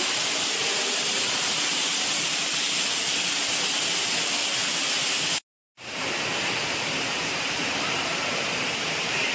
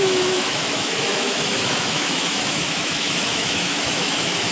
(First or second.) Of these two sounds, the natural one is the first